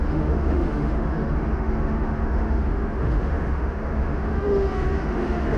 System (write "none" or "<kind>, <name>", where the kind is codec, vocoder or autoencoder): autoencoder, DAC-VAE